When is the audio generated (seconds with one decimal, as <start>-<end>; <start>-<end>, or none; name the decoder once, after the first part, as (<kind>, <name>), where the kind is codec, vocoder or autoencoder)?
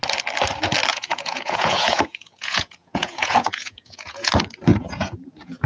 0.9-4.3 (vocoder, Vocos); 4.7-5.7